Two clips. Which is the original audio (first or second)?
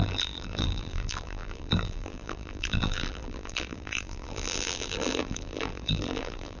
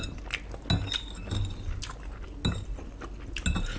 second